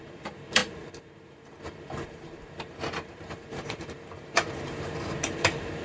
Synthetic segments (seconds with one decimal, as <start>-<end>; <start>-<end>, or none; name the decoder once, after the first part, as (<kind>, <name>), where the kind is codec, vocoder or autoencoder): 0.0-5.8 (vocoder, BigVGAN v2)